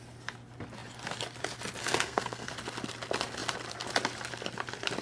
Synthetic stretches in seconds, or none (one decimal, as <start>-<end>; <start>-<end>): 1.8-2.5

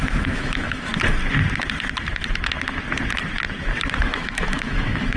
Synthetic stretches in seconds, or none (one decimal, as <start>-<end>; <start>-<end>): 0.0-0.9; 4.0-5.2

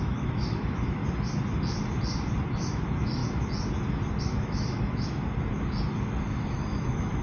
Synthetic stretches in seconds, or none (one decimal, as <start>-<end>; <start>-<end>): 0.0-1.0; 2.6-3.2; 4.2-5.2; 6.3-7.2

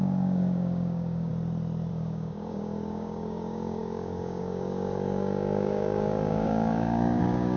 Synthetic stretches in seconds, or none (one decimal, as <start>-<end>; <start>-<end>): 0.0-1.3; 1.9-7.6